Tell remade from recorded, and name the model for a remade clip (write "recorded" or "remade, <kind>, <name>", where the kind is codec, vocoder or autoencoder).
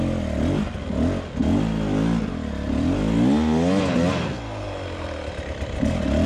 recorded